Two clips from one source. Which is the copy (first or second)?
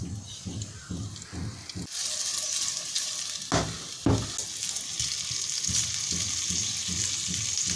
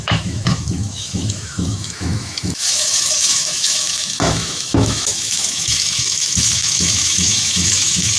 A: second